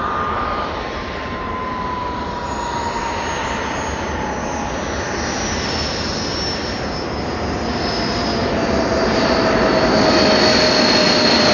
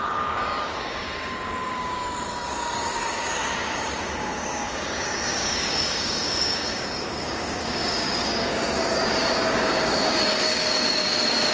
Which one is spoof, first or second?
second